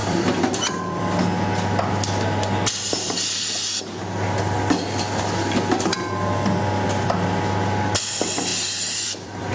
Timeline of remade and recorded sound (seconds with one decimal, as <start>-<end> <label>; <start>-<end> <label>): 0.0-1.0 remade; 1.0-8.5 recorded; 8.5-9.5 remade

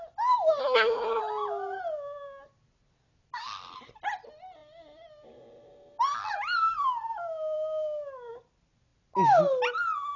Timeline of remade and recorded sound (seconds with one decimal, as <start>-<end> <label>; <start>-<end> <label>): 0.0-0.6 recorded; 0.6-1.2 remade; 1.2-10.2 recorded